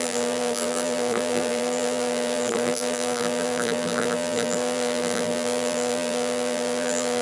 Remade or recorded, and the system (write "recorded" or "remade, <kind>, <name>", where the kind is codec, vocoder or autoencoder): remade, vocoder, BigVGAN v2